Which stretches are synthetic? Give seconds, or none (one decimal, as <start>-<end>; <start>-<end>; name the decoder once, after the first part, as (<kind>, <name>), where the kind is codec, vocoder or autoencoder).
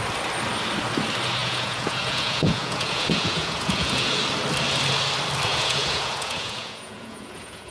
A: 1.4-4.2 (vocoder, Vocos); 5.5-7.7